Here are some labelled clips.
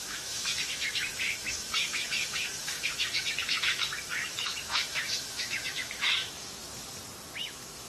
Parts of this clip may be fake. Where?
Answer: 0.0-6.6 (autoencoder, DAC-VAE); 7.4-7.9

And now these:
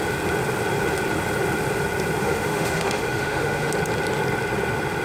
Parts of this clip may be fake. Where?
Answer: 2.2-3.7 (autoencoder, DAC-VAE)

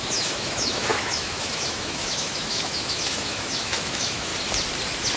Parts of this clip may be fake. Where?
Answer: 0.0-4.3 (autoencoder, DAC-VAE)